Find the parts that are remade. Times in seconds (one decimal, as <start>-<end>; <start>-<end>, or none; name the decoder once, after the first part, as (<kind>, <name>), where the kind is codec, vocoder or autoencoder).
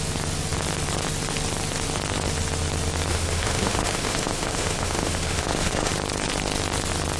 3.1-5.9 (autoencoder, DAC-VAE)